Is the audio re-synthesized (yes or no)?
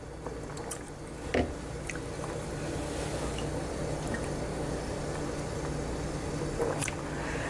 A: no